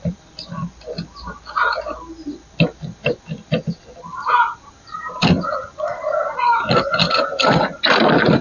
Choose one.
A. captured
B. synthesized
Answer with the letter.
A